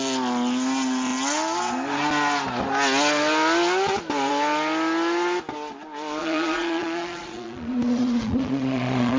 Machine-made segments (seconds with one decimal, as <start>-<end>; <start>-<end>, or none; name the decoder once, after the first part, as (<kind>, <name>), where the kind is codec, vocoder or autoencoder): 6.2-9.2 (vocoder, Vocos)